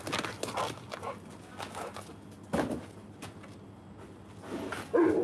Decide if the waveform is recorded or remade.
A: recorded